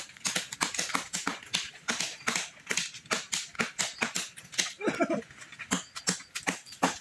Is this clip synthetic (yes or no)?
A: no